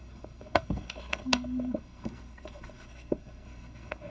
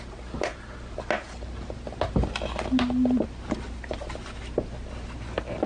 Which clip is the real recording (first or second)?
second